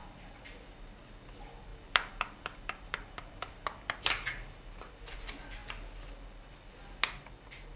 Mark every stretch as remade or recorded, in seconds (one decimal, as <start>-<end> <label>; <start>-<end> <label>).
0.0-1.7 recorded; 1.7-4.1 remade; 4.1-7.8 recorded